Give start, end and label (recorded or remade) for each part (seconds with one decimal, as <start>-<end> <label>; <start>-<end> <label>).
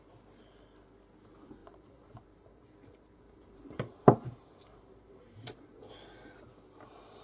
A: 0.0-1.6 recorded; 1.6-5.9 remade; 5.9-7.2 recorded